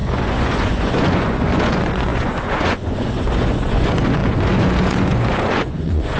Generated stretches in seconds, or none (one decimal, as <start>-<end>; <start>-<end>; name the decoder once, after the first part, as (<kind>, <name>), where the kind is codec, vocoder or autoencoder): 0.0-6.2 (vocoder, Vocos)